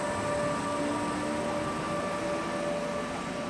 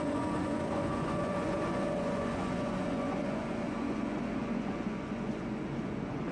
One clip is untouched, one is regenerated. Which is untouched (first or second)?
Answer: first